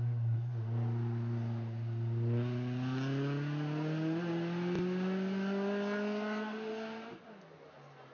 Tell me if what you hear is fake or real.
real